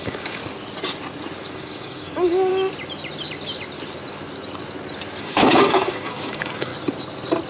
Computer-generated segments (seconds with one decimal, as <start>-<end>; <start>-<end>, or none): 0.0-0.4; 1.5-2.5; 5.2-6.7